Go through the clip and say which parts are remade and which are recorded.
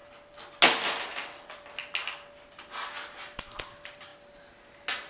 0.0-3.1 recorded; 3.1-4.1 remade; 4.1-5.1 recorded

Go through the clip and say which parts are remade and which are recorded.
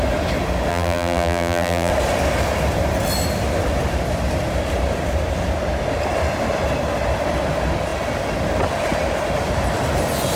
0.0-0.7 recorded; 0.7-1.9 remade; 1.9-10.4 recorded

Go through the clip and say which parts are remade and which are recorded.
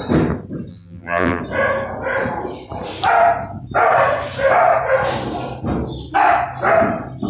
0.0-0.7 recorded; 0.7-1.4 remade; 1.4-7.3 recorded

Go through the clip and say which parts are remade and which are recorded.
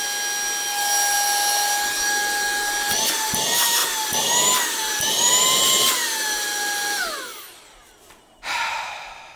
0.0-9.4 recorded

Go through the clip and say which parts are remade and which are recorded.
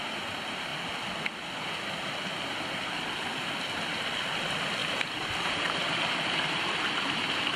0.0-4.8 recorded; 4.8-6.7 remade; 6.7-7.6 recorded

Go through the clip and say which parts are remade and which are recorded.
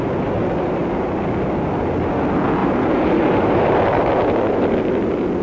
0.0-2.6 recorded; 2.6-4.2 remade; 4.2-5.4 recorded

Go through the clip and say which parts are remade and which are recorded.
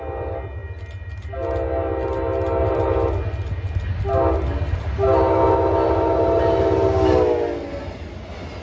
0.0-8.6 recorded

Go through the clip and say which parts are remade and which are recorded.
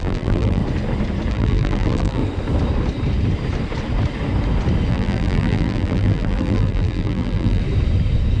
0.0-0.6 remade; 0.6-1.3 recorded; 1.3-2.2 remade; 2.2-4.9 recorded; 4.9-7.6 remade; 7.6-8.4 recorded